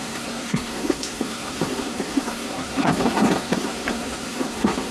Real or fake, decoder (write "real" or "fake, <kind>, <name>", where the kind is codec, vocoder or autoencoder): fake, codec, SNAC